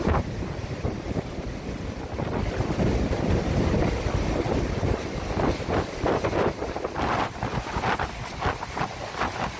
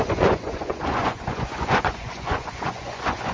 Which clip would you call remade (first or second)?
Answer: second